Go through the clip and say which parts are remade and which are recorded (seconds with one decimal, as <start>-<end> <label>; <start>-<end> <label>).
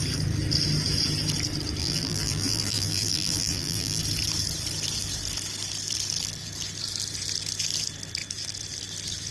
0.0-1.8 recorded; 1.8-4.0 remade; 4.0-9.3 recorded